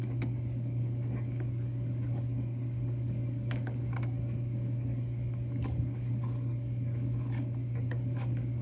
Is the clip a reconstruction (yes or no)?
yes